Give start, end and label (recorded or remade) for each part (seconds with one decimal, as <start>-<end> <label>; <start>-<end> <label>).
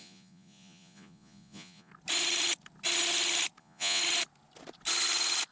0.0-1.9 remade; 1.9-3.6 recorded; 3.6-4.0 remade; 4.0-5.5 recorded